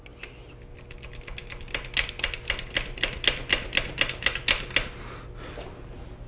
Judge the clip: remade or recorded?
recorded